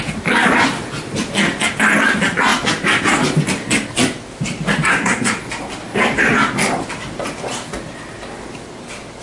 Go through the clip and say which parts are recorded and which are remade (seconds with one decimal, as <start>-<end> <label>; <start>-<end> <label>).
0.0-4.9 recorded; 4.9-5.4 remade; 5.4-9.2 recorded

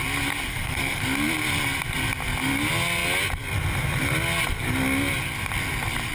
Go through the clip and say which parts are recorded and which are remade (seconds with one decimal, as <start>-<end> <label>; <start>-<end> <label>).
0.0-0.5 recorded; 0.5-1.0 remade; 1.0-6.1 recorded

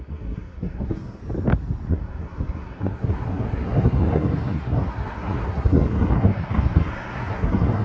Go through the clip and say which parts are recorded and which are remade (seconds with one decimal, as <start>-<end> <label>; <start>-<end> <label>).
0.0-1.2 remade; 1.2-1.9 recorded; 1.9-7.8 remade